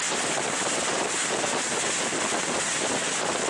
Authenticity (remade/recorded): recorded